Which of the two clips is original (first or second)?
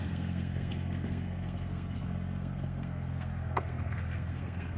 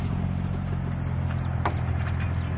second